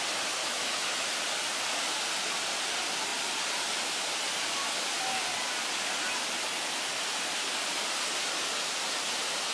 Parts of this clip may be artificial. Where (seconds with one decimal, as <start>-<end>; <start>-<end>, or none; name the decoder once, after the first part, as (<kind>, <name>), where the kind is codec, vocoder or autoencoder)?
0.4-1.1 (autoencoder, DAC-VAE)